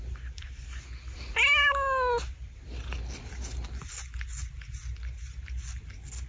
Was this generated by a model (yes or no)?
no